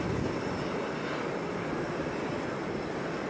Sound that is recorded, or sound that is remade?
recorded